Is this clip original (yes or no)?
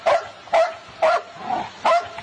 yes